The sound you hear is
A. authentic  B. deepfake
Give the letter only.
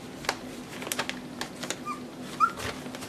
A